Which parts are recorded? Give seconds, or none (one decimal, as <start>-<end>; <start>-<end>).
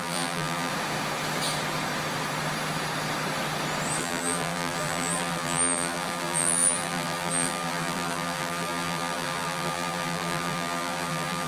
0.7-4.0